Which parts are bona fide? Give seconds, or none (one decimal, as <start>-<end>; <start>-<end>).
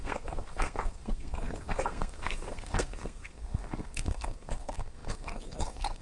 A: none